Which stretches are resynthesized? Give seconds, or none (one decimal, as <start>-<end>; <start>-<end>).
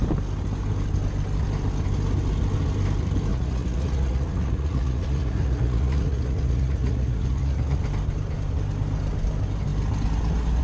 3.3-7.8